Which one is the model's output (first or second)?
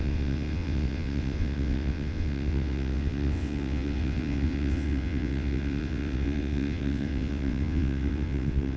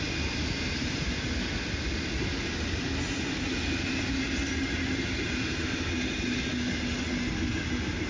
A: first